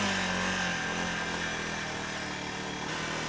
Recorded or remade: recorded